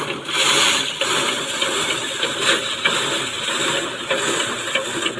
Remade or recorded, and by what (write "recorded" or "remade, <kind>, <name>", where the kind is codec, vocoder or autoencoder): recorded